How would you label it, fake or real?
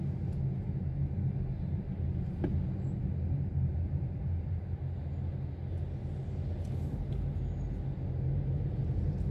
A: real